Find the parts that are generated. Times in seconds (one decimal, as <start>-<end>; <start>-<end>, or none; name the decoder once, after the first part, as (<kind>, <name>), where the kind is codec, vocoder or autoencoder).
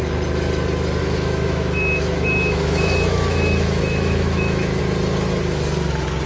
1.0-4.8 (autoencoder, DAC-VAE)